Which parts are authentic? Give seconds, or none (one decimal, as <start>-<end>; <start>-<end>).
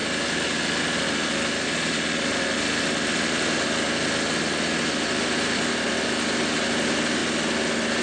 0.0-8.0